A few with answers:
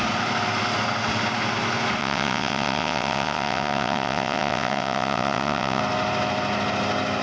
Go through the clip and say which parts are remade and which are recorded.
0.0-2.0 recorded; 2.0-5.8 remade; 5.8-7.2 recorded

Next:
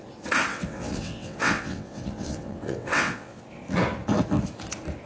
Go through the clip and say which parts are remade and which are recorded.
0.0-0.5 recorded; 0.5-3.4 remade; 3.4-5.1 recorded

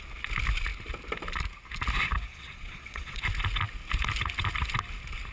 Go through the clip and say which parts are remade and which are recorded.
0.0-2.3 recorded; 2.3-3.2 remade; 3.2-5.3 recorded

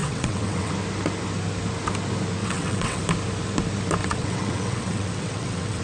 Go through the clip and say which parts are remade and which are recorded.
0.0-0.7 remade; 0.7-2.4 recorded; 2.4-3.0 remade; 3.0-4.0 recorded; 4.0-5.8 remade

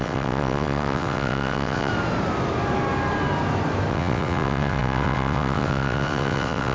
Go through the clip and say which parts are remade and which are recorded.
0.0-1.9 remade; 1.9-3.9 recorded; 3.9-6.7 remade